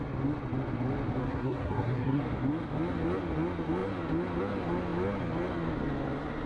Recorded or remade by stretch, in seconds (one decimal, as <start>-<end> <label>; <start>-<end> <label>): 0.0-1.2 recorded; 1.2-2.2 remade; 2.2-6.5 recorded